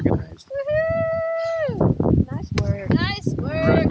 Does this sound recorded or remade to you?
recorded